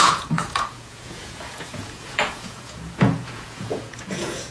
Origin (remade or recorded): remade